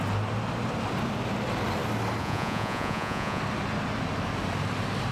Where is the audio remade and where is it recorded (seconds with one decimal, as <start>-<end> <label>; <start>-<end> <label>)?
0.0-2.2 recorded; 2.2-3.4 remade; 3.4-5.1 recorded